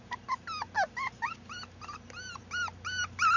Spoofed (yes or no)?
no